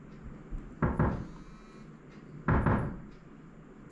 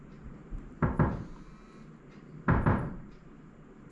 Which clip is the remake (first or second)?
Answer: second